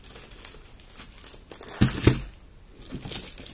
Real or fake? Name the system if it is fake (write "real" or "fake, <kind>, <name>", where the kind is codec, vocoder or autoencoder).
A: real